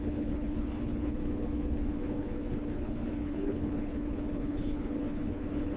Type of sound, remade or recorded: remade